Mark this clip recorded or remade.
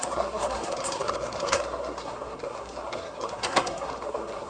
remade